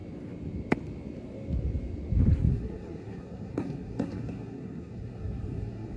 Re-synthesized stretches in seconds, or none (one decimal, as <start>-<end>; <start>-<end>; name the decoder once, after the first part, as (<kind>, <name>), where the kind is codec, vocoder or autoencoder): 2.5-6.0 (codec, SNAC)

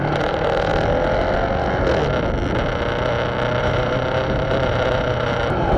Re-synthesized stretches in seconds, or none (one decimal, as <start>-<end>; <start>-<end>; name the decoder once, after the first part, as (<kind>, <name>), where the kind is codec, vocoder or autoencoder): 0.0-0.7 (vocoder, BigVGAN v2); 3.6-5.8

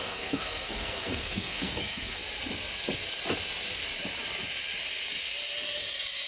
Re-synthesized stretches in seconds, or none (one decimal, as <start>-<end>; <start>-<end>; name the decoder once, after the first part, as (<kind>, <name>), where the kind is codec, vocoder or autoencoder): 0.0-2.2 (codec, SNAC)